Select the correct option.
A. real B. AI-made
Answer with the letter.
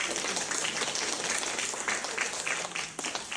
A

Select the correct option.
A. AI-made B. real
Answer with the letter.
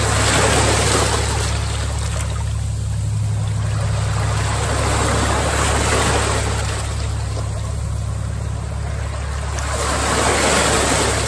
B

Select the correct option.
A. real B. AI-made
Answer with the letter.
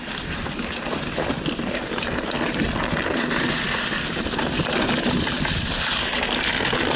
A